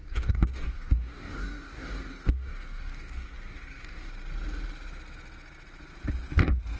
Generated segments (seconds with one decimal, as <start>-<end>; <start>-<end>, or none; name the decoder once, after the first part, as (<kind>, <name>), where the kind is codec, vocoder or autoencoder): 0.0-4.1 (codec, DAC)